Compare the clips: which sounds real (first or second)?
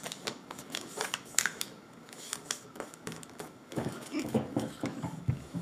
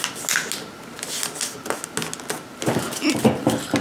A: second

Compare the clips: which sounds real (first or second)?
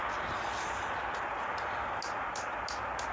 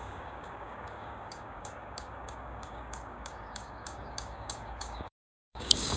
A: first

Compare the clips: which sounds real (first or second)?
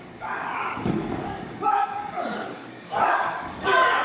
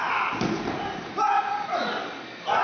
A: second